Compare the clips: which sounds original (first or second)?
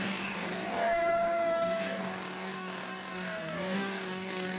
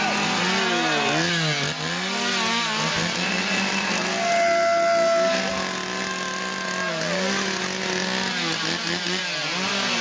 second